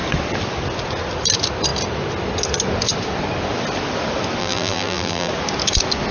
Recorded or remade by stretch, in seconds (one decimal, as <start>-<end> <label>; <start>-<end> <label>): 0.0-4.4 recorded; 4.4-5.3 remade; 5.3-6.1 recorded